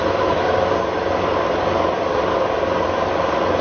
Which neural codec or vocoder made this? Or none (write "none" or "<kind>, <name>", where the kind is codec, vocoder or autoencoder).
vocoder, BigVGAN v2